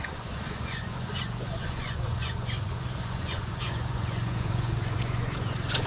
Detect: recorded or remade remade